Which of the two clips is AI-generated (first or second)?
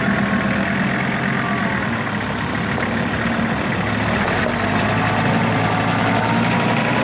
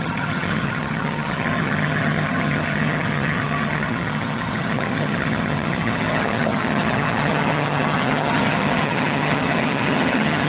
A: second